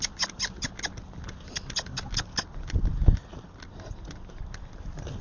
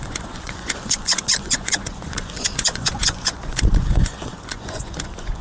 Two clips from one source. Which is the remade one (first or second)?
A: second